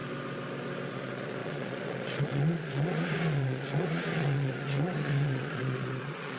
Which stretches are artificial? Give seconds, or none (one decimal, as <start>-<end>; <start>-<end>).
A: 0.9-6.4